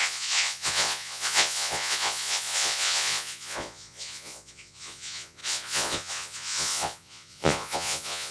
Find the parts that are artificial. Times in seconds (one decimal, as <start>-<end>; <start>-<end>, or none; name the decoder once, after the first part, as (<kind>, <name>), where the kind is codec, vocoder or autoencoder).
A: 0.0-8.3 (vocoder, Vocos)